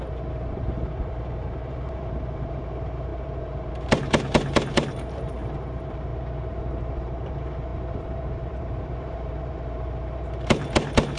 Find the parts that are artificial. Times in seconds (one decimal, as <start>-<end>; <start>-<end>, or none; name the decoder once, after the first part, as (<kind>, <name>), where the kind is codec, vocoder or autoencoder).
0.0-6.1 (vocoder, BigVGAN v2); 6.7-11.2